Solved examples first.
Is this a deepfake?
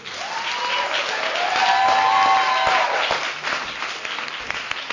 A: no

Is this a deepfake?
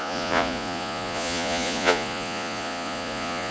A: yes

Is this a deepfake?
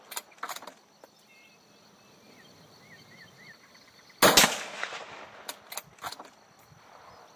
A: no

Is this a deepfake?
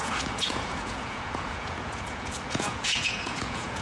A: yes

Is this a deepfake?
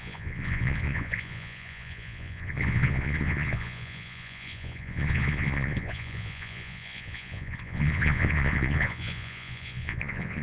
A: yes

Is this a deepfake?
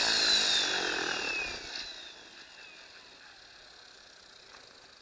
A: no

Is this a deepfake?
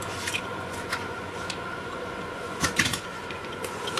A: yes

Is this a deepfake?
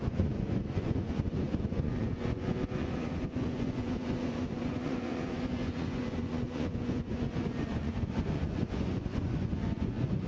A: yes